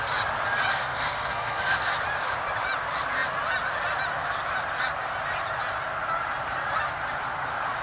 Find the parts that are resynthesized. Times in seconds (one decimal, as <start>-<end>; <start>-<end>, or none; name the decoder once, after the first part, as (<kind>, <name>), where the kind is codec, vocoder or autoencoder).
0.7-1.9 (codec, SNAC)

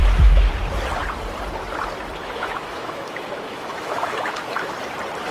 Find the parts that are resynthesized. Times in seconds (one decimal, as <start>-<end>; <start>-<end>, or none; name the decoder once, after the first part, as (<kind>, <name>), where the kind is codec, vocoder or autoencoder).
0.0-0.5 (autoencoder, DAC-VAE); 2.2-4.7

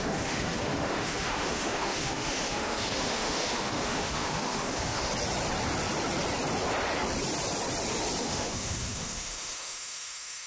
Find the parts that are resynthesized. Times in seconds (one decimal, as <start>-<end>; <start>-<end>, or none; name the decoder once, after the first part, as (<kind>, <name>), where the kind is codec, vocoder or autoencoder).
0.0-5.1 (autoencoder, DAC-VAE); 8.2-10.5